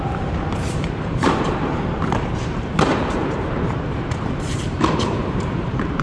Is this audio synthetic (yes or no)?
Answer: yes